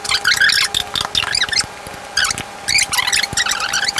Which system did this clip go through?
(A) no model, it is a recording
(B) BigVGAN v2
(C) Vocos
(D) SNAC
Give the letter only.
A